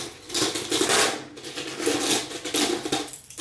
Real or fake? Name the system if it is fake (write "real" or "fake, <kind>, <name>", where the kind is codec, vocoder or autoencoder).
real